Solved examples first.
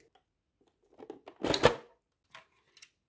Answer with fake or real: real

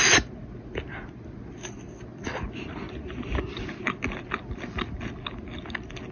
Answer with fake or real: real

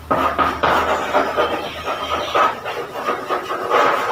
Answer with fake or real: real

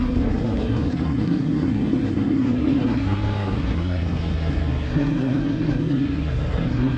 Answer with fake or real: fake